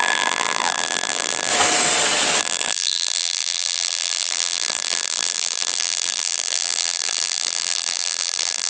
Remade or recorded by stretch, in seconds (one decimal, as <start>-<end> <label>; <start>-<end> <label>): 0.0-1.5 remade; 1.5-2.4 recorded; 2.4-8.7 remade